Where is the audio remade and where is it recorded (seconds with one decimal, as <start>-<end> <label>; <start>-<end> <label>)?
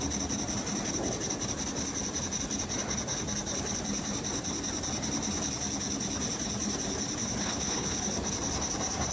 0.0-7.4 recorded; 7.4-8.0 remade; 8.0-9.1 recorded